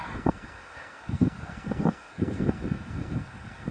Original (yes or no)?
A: no